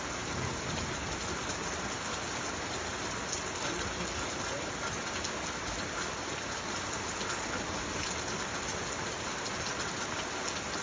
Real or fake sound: real